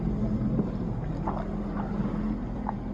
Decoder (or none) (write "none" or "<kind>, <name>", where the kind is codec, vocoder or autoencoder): none